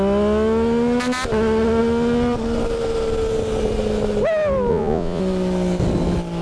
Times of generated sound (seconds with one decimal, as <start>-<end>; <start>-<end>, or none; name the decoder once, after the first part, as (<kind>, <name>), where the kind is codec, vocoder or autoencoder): 4.7-5.2 (vocoder, Vocos)